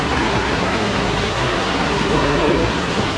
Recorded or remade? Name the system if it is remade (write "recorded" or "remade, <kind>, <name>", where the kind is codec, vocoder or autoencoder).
remade, codec, SNAC